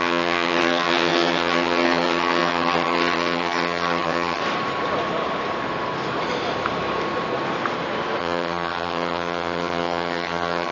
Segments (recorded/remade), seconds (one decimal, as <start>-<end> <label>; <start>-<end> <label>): 0.0-4.4 remade; 4.4-8.2 recorded; 8.2-10.7 remade